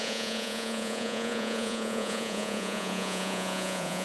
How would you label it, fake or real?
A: fake